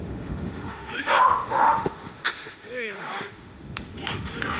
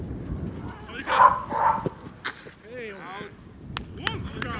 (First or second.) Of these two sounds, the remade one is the first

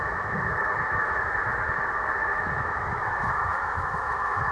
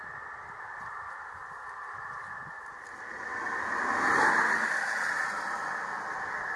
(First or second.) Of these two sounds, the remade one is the first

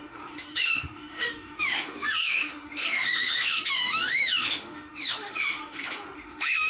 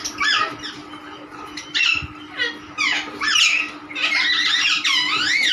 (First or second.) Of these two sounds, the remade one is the first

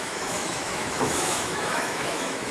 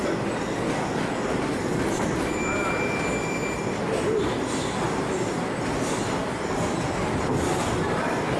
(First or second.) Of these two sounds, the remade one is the first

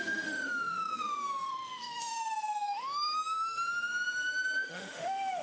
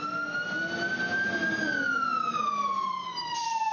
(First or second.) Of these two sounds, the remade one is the first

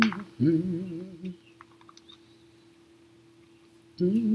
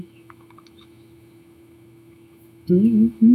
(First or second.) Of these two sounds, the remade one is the second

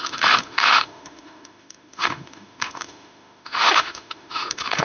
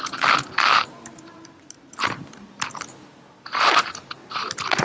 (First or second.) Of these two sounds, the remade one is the first